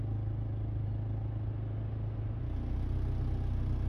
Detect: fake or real real